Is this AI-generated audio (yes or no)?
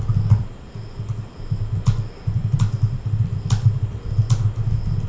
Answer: no